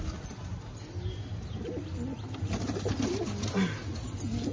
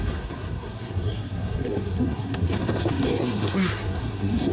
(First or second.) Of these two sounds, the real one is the first